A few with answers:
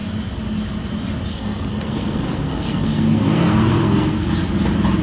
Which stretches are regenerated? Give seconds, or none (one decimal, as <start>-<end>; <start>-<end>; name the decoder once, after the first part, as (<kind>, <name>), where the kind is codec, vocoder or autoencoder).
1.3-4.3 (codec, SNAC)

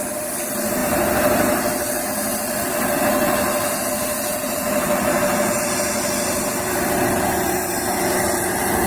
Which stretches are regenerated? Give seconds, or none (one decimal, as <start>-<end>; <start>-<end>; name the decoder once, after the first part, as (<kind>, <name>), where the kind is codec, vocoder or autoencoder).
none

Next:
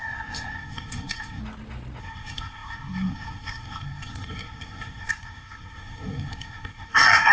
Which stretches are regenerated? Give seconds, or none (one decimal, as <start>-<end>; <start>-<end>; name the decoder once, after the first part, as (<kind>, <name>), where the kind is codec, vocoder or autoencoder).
0.0-1.4 (codec, SNAC); 2.0-7.3